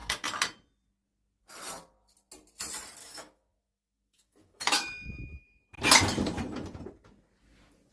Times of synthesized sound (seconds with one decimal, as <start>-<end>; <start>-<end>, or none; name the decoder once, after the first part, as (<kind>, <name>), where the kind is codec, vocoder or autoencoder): 3.0-5.6 (autoencoder, DAC-VAE)